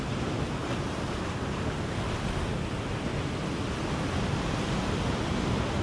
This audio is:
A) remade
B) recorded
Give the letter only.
B